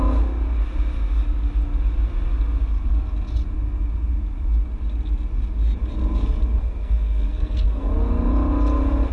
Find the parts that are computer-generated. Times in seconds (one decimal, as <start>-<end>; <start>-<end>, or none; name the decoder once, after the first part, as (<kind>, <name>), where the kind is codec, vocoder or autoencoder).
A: 6.6-7.9 (codec, SNAC)